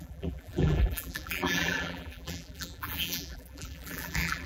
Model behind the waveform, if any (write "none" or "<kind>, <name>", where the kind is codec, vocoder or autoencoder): vocoder, BigVGAN v2